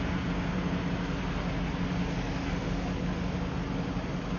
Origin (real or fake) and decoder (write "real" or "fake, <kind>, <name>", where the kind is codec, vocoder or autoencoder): real